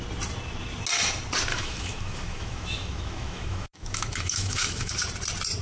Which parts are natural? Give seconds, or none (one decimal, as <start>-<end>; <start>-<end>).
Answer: 0.0-1.5; 4.9-5.6